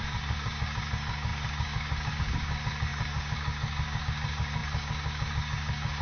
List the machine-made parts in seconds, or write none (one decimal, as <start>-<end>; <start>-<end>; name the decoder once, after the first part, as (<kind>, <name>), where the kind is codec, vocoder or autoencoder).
0.0-6.0 (codec, DAC)